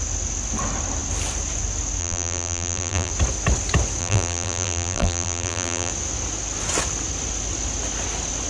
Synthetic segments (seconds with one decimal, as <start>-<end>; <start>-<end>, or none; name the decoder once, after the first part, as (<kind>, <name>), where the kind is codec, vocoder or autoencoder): 2.0-3.1 (vocoder, BigVGAN v2); 4.0-5.9